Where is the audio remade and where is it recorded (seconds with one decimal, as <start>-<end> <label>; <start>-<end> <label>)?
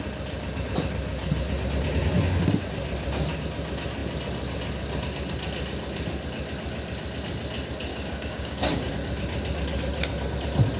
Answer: 0.0-7.9 recorded; 7.9-8.9 remade; 8.9-10.8 recorded